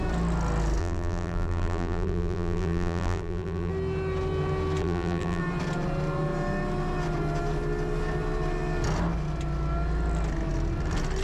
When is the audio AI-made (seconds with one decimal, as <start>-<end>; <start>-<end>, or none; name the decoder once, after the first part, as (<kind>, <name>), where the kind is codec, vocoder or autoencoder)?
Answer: 0.8-3.7 (vocoder, BigVGAN v2); 4.8-5.4